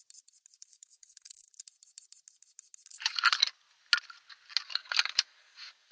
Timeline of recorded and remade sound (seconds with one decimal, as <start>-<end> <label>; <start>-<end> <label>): 0.0-0.7 recorded; 0.7-1.5 remade; 1.5-4.8 recorded; 4.8-5.9 remade